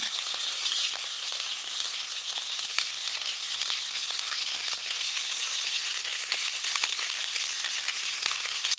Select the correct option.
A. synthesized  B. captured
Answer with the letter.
A